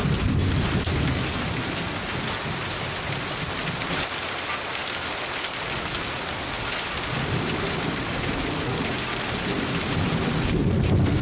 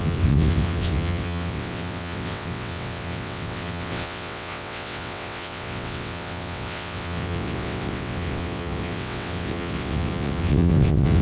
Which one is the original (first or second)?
first